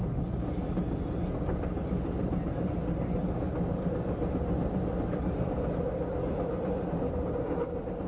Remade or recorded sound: recorded